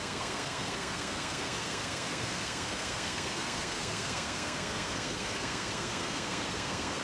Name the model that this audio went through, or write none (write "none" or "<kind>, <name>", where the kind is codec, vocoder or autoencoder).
codec, SNAC